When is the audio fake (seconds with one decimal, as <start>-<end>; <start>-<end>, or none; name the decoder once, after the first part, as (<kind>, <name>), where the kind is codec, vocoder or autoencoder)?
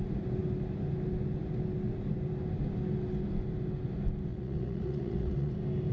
4.3-5.5 (vocoder, Vocos)